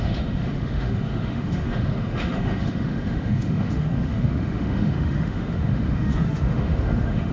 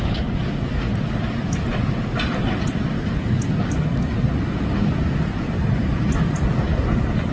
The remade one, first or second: first